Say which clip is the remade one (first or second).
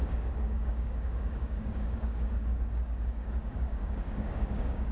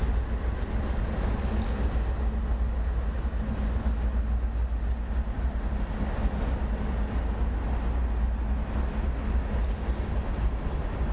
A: first